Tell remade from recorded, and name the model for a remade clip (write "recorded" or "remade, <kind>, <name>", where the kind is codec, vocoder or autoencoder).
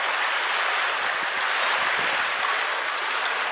recorded